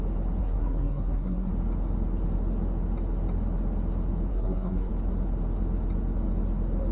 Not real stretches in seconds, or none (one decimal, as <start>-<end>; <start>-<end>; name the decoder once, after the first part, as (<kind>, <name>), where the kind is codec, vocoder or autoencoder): 0.4-1.5 (codec, SNAC); 4.3-4.9